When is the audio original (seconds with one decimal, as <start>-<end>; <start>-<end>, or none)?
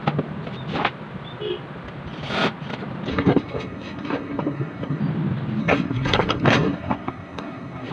0.0-3.1; 5.0-5.6